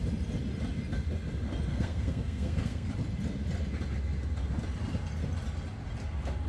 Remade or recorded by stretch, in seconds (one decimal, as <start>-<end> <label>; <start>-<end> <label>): 0.0-1.7 recorded; 1.7-2.9 remade; 2.9-6.5 recorded